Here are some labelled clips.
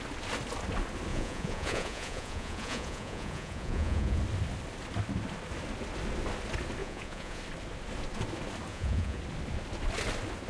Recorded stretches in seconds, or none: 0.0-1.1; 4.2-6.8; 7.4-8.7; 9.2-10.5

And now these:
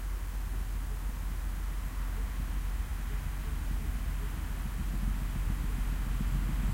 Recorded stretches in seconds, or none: 0.0-6.7

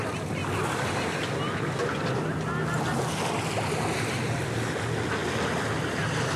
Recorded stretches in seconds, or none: 0.0-6.4

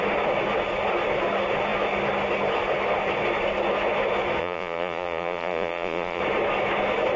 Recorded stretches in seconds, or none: 0.0-4.4; 6.2-7.2

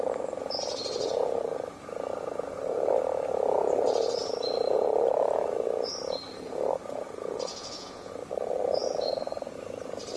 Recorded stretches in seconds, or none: 0.0-7.5; 8.1-10.2